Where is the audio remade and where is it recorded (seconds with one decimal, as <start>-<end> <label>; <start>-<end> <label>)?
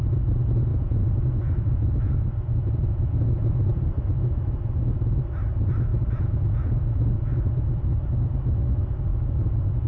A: 0.0-0.7 recorded; 0.7-3.6 remade; 3.6-5.9 recorded; 5.9-7.5 remade; 7.5-9.1 recorded; 9.1-9.9 remade